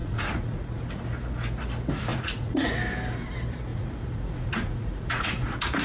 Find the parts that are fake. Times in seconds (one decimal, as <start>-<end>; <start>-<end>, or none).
0.0-0.8; 2.1-2.7; 3.7-5.8